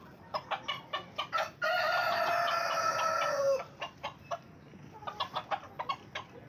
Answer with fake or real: real